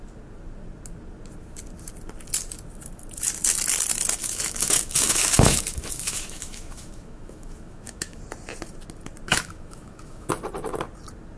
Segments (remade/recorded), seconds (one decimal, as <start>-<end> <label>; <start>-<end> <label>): 0.0-4.2 recorded; 4.2-8.2 remade; 8.2-9.3 recorded; 9.3-10.3 remade; 10.3-11.4 recorded